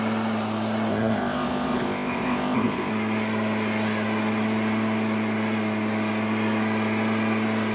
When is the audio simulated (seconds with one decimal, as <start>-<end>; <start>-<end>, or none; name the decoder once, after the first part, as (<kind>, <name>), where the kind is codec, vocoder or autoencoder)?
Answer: 0.9-2.9 (codec, ZipCodec)